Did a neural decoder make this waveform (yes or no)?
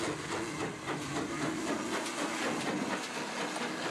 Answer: no